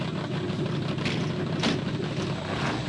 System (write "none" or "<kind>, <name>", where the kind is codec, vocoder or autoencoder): none